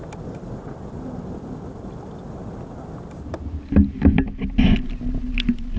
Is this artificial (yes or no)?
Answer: no